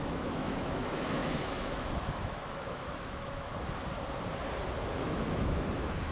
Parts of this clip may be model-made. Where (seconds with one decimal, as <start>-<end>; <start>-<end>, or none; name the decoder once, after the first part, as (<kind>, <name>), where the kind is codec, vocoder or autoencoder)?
0.0-3.5 (autoencoder, DAC-VAE); 5.0-6.1